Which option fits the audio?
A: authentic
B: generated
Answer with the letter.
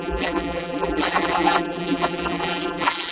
B